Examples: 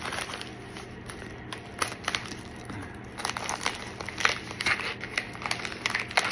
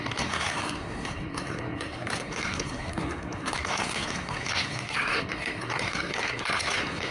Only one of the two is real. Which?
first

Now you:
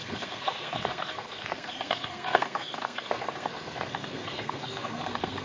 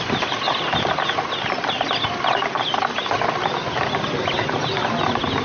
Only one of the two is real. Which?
second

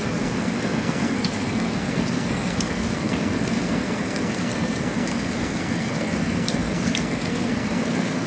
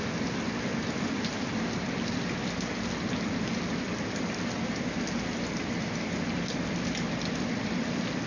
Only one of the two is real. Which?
second